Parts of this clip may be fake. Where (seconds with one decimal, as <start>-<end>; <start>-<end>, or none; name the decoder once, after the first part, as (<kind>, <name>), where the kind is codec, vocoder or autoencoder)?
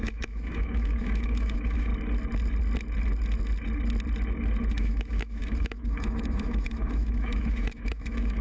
0.0-1.9 (autoencoder, DAC-VAE); 4.7-8.4